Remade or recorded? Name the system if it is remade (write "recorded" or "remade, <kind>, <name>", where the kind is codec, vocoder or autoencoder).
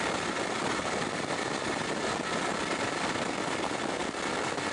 recorded